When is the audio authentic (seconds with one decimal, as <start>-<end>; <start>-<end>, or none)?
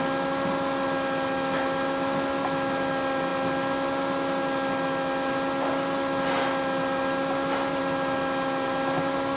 0.0-9.4